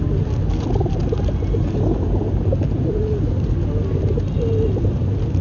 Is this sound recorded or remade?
recorded